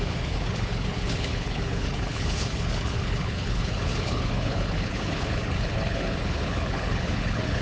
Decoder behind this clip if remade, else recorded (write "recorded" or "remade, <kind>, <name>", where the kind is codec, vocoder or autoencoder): remade, codec, HILCodec